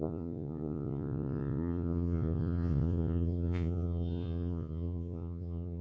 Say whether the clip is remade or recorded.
remade